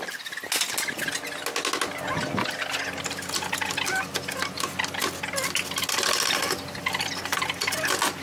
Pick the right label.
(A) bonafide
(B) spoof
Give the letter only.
A